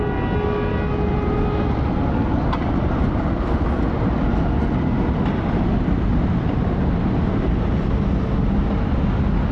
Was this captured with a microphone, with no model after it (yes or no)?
yes